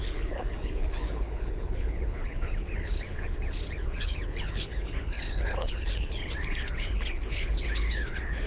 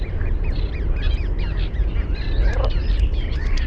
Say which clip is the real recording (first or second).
second